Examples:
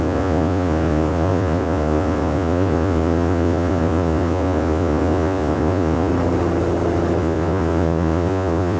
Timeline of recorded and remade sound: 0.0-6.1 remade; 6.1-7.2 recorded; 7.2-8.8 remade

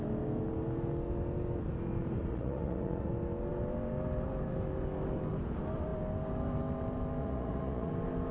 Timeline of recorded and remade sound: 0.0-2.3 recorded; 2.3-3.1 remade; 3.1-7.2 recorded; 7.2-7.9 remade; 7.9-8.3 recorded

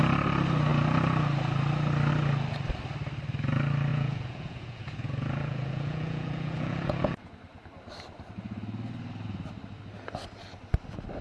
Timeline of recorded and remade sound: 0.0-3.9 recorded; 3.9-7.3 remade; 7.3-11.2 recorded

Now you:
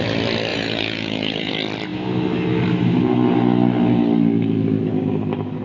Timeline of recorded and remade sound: 0.0-0.5 recorded; 0.5-1.5 remade; 1.5-5.6 recorded